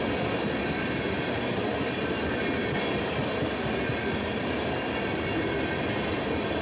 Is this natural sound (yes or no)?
yes